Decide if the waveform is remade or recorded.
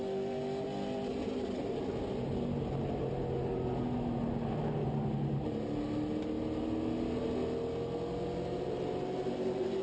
recorded